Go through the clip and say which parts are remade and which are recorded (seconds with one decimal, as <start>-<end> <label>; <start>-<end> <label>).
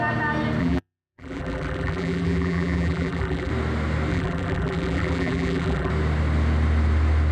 0.0-0.6 recorded; 0.6-3.5 remade; 3.5-4.1 recorded; 4.1-5.9 remade; 5.9-7.3 recorded